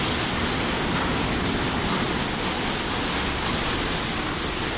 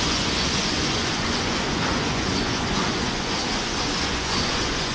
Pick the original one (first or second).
first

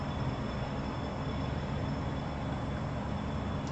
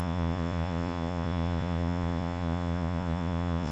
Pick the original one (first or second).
first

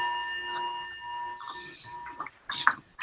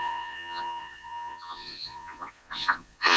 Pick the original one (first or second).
first